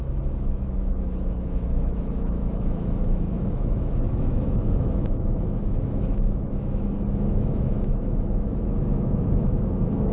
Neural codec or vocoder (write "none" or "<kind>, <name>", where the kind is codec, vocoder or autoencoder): autoencoder, DAC-VAE